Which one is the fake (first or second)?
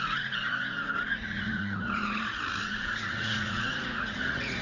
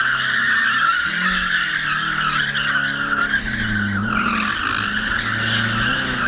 first